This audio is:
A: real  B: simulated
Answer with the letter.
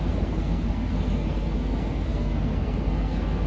B